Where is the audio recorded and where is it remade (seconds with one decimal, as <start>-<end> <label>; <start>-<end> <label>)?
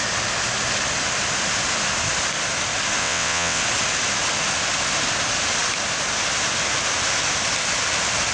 0.0-3.0 recorded; 3.0-3.6 remade; 3.6-8.3 recorded